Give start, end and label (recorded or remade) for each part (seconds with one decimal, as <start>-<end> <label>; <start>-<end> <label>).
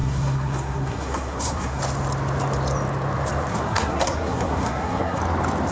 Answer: 0.0-1.8 remade; 1.8-3.5 recorded; 3.5-5.2 remade; 5.2-5.7 recorded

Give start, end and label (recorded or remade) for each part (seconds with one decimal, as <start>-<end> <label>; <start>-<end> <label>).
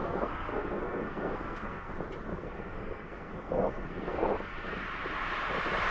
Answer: 0.0-1.9 remade; 1.9-2.3 recorded; 2.3-4.8 remade; 4.8-5.9 recorded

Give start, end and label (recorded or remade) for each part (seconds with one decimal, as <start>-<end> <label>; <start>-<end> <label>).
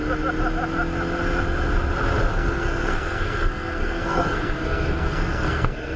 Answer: 0.0-2.3 recorded; 2.3-6.0 remade